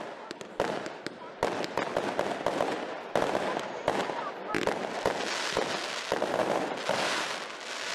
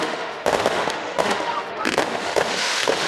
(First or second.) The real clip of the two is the first